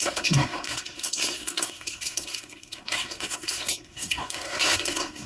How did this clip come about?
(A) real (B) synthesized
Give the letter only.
B